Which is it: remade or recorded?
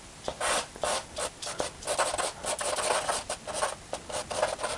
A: recorded